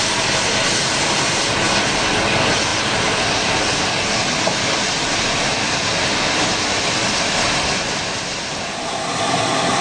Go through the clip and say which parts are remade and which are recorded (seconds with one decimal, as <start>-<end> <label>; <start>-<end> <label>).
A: 0.0-9.8 recorded